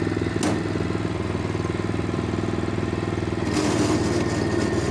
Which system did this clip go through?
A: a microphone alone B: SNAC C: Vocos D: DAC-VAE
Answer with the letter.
A